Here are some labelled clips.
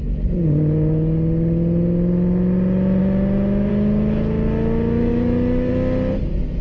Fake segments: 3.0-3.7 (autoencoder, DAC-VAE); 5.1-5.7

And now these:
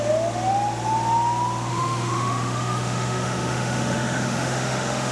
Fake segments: 1.7-5.1 (autoencoder, DAC-VAE)

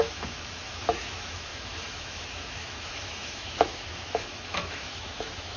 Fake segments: 0.0-5.6 (autoencoder, DAC-VAE)

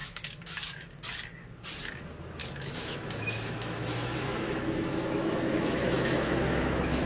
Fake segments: 0.0-1.0 (autoencoder, DAC-VAE); 2.4-6.5